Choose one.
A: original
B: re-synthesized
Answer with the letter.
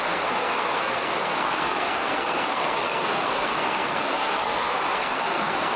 B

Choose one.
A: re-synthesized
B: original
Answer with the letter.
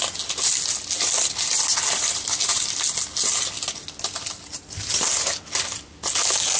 B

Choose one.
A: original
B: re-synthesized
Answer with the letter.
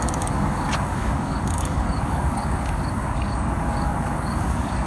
B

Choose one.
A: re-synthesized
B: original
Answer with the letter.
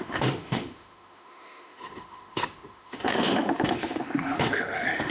A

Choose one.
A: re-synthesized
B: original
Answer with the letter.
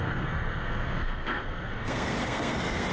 A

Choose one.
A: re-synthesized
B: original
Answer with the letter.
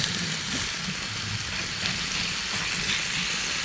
B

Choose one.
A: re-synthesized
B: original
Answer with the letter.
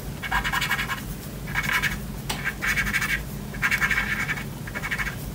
B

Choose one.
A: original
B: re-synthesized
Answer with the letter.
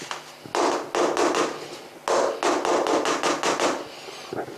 A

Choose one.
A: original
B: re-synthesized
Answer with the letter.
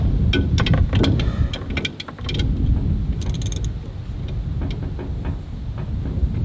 A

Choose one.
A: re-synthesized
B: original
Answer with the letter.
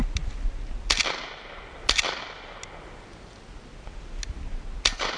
B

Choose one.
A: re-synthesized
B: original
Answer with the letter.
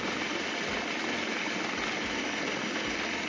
B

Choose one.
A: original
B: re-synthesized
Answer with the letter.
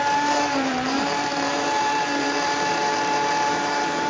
B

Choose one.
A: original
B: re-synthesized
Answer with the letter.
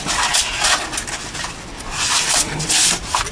A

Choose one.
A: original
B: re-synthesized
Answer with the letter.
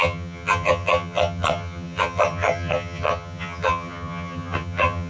B